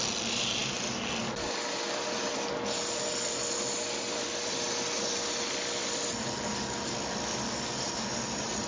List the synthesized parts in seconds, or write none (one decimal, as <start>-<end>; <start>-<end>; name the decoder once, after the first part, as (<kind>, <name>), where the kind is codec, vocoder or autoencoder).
none